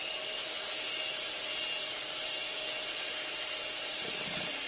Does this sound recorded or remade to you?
recorded